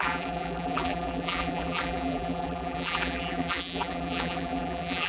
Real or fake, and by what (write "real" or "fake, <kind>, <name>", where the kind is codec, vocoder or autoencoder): fake, vocoder, BigVGAN v2